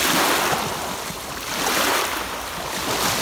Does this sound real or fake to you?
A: fake